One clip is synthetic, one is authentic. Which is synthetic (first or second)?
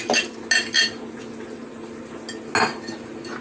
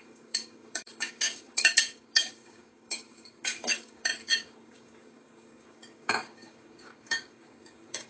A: second